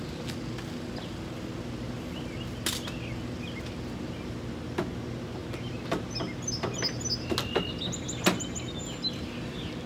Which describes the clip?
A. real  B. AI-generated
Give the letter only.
A